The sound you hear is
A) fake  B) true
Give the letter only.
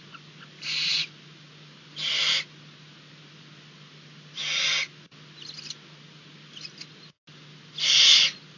B